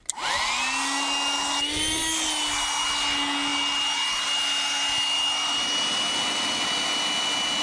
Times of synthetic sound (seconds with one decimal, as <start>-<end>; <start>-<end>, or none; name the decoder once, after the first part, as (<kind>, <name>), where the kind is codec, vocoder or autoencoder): none

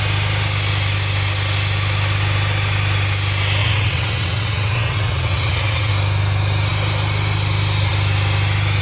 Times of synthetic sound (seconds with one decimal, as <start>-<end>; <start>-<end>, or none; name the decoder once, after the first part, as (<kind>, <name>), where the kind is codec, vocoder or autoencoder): 3.6-5.9 (vocoder, WaveNeXt)

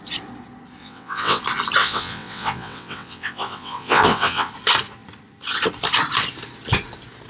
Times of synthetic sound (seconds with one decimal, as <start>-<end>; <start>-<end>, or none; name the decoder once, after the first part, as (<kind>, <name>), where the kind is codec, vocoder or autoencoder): 0.8-1.4 (vocoder, WaveNeXt); 1.8-4.5

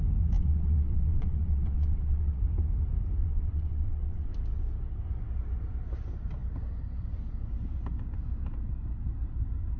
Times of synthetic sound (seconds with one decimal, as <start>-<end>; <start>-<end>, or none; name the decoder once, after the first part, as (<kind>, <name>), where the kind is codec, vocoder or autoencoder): 0.4-2.4 (vocoder, WaveNeXt); 3.2-4.3

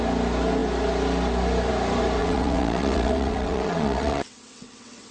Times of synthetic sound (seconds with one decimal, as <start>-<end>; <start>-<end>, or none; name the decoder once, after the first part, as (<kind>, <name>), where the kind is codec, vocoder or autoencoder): 2.2-5.1 (vocoder, WaveNeXt)